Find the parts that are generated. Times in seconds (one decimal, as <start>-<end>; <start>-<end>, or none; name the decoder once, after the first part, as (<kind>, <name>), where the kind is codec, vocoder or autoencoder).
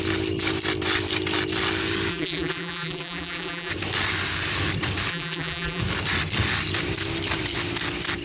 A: 2.1-3.7 (vocoder, BigVGAN v2); 5.1-5.8